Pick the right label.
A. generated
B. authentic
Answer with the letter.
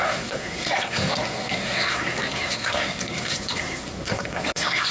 A